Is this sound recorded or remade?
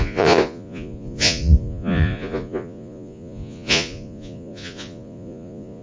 remade